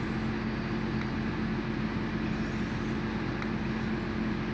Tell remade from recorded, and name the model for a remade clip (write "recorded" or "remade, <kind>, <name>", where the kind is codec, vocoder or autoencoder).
recorded